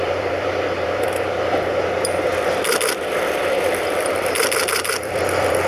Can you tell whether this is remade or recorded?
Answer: remade